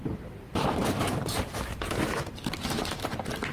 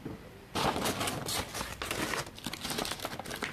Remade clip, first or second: first